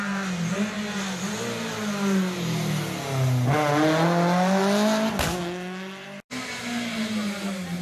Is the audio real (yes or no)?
yes